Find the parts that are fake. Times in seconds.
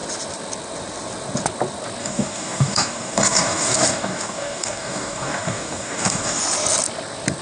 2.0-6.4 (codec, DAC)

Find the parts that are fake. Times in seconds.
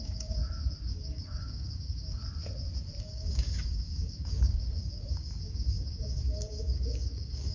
0.0-0.4 (codec, DAC); 0.9-2.2; 3.0-7.5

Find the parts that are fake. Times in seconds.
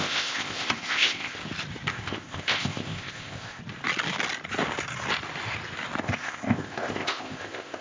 0.0-1.4 (codec, ZipCodec); 1.9-3.6; 6.0-7.8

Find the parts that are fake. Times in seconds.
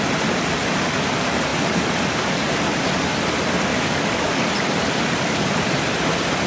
3.7-4.5 (codec, DAC)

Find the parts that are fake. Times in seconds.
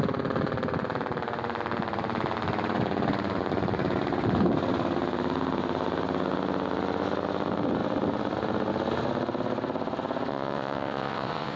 10.3-11.6 (vocoder, WaveNeXt)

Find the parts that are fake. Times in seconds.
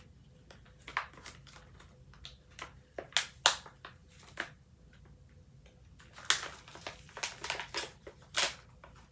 none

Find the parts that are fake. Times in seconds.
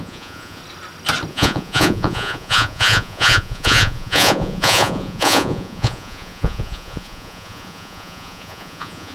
0.0-0.6 (vocoder, Vocos); 1.3-9.1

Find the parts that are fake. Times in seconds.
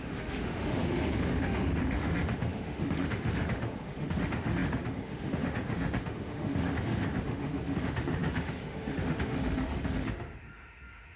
0.0-11.2 (autoencoder, DAC-VAE)